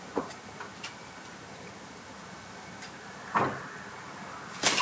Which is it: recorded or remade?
recorded